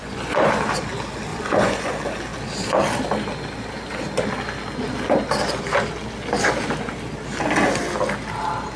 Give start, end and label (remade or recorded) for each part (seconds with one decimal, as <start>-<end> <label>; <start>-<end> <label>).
0.0-0.5 remade; 0.5-1.3 recorded; 1.3-1.9 remade; 1.9-8.8 recorded